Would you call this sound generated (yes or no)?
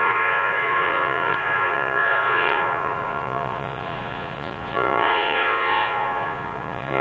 yes